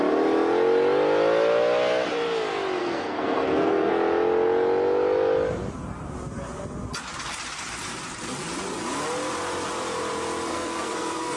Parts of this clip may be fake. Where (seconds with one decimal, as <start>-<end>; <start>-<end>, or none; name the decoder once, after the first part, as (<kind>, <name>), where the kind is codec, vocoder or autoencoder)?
2.8-3.9 (codec, SNAC); 10.5-11.4